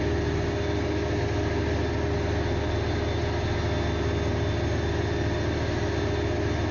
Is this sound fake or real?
real